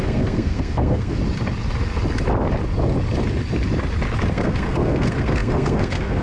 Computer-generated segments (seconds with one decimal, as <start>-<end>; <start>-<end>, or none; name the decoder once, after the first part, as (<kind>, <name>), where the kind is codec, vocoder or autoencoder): 0.0-1.2 (codec, SNAC); 4.3-6.2

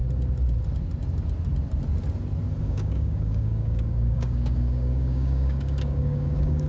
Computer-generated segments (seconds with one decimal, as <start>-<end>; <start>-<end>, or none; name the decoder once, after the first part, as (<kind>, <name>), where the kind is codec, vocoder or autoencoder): 2.6-6.7 (codec, DAC)

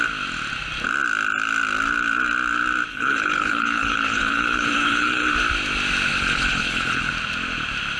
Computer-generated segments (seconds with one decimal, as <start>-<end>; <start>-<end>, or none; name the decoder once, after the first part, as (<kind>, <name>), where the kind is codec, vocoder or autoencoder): 2.9-5.3 (codec, HILCodec); 6.1-7.1

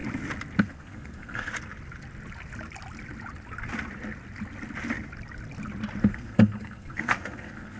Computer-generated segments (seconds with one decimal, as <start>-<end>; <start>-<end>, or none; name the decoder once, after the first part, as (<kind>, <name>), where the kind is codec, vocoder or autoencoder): 0.6-1.5 (codec, SNAC); 6.0-7.8

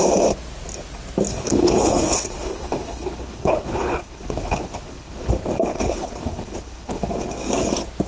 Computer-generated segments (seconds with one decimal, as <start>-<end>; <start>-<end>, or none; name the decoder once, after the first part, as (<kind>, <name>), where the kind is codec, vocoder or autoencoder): 1.3-5.3 (codec, HILCodec); 5.7-7.1

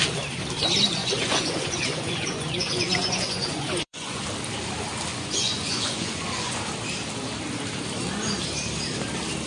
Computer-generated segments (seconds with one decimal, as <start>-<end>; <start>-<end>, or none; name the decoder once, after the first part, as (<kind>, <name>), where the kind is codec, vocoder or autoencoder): 1.0-4.2 (vocoder, Vocos); 5.1-6.6

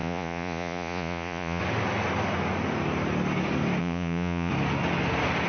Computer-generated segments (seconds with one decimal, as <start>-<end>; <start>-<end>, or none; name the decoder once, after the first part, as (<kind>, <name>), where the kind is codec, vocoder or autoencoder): 0.0-1.6 (vocoder, Vocos); 3.8-4.5